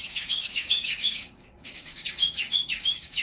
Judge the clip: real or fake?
fake